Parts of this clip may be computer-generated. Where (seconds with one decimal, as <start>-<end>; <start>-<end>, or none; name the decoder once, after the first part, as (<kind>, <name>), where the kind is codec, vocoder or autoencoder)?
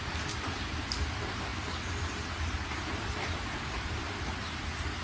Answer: 1.5-4.2 (vocoder, BigVGAN v2)